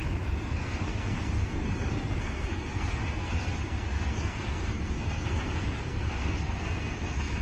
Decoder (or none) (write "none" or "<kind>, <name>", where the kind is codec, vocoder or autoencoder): codec, SNAC